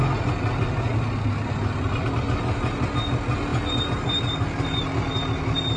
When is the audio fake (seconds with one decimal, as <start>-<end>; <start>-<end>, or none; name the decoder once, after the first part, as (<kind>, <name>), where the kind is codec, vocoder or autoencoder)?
none